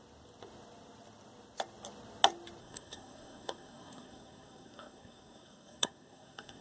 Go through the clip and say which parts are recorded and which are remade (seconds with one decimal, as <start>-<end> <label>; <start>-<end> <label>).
0.0-2.6 recorded; 2.6-6.6 remade

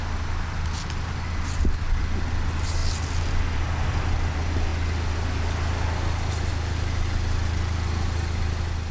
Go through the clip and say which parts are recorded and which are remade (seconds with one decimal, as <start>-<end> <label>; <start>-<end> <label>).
0.0-8.9 recorded

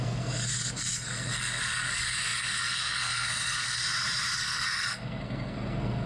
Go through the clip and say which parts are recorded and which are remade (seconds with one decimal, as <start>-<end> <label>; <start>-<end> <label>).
0.0-3.8 remade; 3.8-4.4 recorded; 4.4-6.1 remade

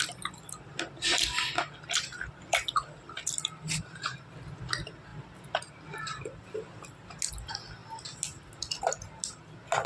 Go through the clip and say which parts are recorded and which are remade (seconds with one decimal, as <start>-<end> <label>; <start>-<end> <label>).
0.0-9.9 recorded

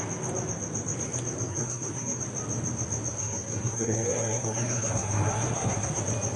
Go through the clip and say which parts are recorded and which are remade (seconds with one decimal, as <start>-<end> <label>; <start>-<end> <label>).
0.0-1.5 recorded; 1.5-2.2 remade; 2.2-3.2 recorded; 3.2-6.0 remade; 6.0-6.4 recorded

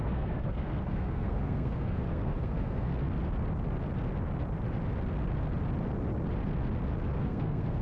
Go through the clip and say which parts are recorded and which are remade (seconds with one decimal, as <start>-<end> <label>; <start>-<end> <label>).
0.0-2.9 remade; 2.9-7.2 recorded; 7.2-7.8 remade

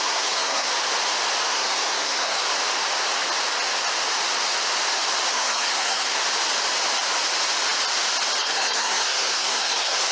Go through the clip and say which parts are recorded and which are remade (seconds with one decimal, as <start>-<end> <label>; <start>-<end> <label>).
0.0-0.7 remade; 0.7-1.5 recorded; 1.5-2.4 remade; 2.4-5.3 recorded; 5.3-6.2 remade; 6.2-8.4 recorded; 8.4-10.1 remade